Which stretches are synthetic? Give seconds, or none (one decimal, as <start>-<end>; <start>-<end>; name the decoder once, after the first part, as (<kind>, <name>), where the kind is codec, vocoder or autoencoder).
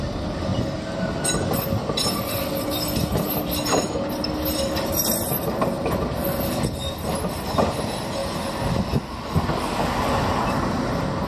none